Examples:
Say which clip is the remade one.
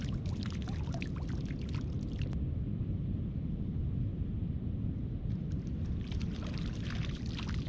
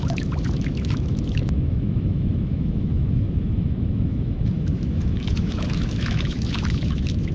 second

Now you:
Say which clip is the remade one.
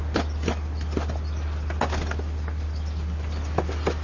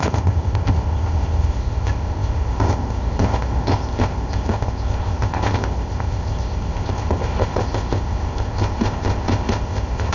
second